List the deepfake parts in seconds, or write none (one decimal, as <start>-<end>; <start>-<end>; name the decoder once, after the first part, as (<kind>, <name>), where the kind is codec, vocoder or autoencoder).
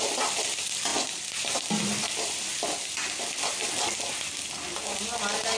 none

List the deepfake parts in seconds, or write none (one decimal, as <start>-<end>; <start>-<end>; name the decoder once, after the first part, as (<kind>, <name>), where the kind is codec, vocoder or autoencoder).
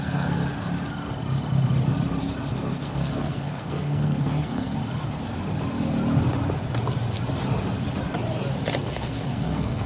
0.0-0.4 (codec, SNAC); 2.5-4.8; 8.8-9.9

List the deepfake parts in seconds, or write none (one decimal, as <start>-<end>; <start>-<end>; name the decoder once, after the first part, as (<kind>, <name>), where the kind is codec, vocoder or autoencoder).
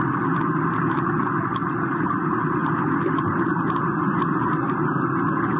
none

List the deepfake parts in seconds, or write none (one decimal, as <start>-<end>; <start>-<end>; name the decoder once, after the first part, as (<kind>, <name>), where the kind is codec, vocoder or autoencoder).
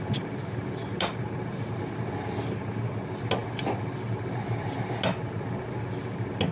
none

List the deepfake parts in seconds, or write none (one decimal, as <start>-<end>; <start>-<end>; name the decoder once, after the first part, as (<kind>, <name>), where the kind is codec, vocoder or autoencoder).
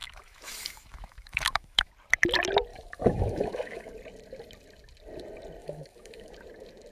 0.0-1.9 (autoencoder, DAC-VAE); 2.7-3.9; 5.6-6.3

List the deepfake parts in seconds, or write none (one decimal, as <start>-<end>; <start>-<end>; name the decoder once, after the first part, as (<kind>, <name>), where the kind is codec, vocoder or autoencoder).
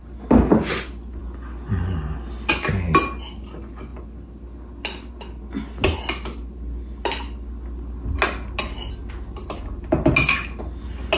none